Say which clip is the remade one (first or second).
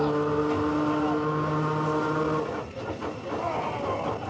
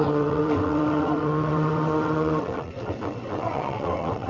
second